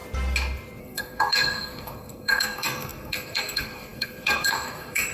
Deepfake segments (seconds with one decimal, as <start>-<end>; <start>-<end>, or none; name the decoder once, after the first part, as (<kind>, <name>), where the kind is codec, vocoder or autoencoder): 0.8-5.1 (codec, SNAC)